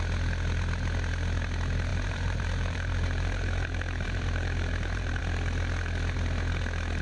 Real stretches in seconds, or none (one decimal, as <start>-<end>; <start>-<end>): 0.0-1.9; 5.2-7.0